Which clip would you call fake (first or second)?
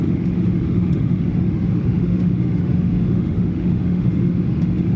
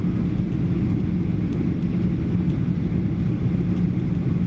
first